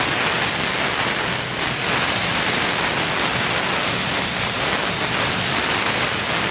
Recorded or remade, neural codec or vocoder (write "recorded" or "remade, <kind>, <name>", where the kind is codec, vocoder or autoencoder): recorded